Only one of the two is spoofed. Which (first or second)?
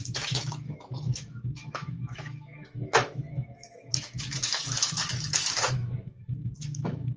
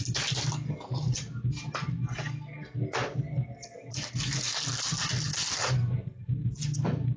first